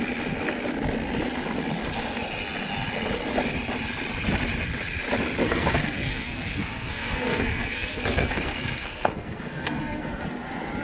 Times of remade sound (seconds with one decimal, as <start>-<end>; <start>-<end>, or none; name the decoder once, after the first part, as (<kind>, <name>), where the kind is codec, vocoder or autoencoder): 5.4-10.2 (codec, SNAC)